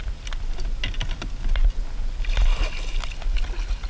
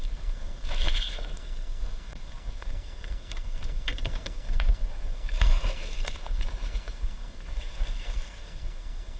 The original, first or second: first